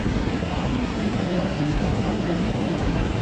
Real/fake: fake